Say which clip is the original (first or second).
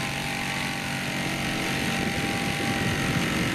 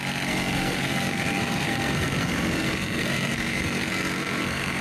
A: first